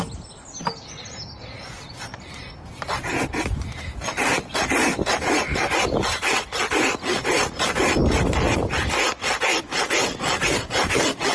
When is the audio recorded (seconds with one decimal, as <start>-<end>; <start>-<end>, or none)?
0.0-3.1; 3.8-11.3